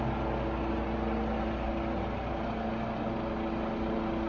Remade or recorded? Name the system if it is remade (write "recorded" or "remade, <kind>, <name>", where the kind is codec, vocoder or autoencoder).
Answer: recorded